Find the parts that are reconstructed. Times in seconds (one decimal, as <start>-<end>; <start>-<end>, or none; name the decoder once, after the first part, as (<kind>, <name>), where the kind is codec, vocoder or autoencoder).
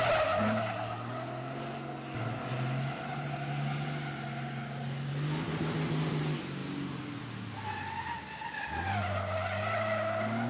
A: none